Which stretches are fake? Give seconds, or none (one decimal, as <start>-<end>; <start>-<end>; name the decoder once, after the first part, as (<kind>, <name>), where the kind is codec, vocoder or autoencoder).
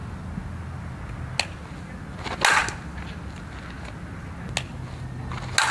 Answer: none